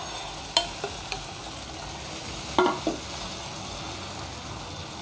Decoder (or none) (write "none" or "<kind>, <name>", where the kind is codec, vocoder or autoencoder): none